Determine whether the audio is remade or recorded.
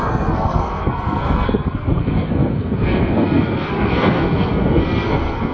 remade